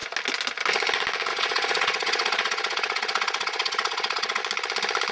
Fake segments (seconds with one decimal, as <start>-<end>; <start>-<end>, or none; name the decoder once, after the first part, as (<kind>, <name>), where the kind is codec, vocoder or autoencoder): 1.3-4.4 (vocoder, Vocos)